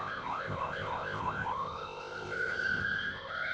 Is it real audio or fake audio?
fake